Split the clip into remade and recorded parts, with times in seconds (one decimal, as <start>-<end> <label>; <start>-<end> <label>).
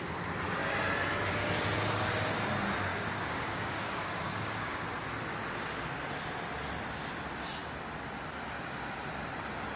0.0-2.9 recorded; 2.9-5.0 remade; 5.0-9.8 recorded